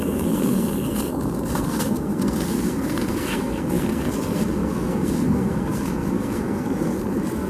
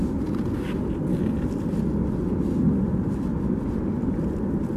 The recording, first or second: second